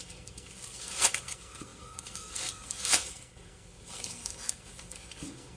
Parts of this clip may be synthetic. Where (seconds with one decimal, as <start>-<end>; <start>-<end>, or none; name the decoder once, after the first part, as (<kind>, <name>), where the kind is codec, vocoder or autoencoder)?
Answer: 0.0-5.6 (codec, SNAC)